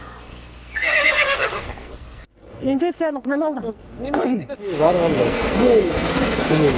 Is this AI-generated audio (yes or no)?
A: yes